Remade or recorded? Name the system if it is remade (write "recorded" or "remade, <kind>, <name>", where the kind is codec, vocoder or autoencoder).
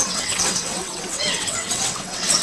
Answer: remade, vocoder, WaveNeXt